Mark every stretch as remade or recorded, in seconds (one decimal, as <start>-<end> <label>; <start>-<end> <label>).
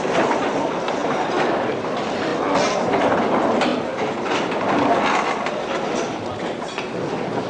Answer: 0.0-7.5 recorded